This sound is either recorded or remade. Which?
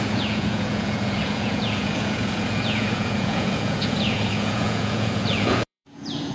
remade